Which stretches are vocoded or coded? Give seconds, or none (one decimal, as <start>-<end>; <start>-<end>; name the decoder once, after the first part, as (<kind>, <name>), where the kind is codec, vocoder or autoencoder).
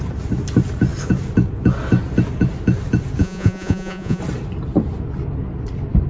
3.2-4.2 (vocoder, Vocos)